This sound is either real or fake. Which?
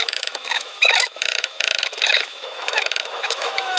fake